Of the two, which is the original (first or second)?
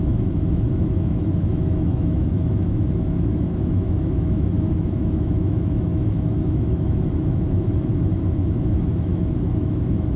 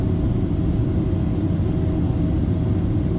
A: second